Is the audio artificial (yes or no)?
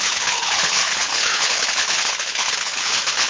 yes